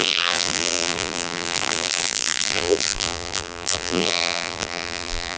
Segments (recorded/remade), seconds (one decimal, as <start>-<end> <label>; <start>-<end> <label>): 0.0-5.4 remade